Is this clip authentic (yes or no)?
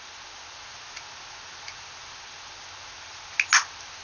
yes